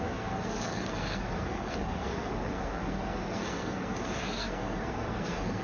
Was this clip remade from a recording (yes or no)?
yes